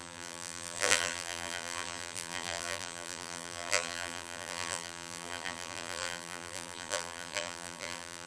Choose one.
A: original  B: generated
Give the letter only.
B